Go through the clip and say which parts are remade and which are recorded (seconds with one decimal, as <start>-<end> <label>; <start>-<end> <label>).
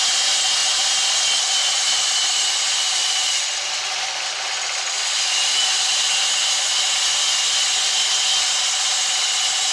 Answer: 0.0-9.7 recorded